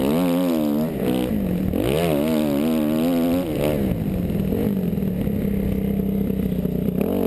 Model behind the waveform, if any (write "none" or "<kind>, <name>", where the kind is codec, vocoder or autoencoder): none